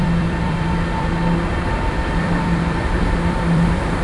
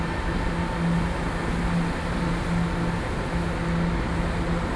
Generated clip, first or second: first